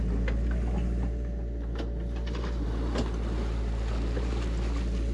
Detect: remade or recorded recorded